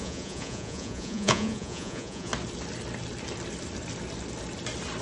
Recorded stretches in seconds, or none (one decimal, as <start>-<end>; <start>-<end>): 2.3-5.0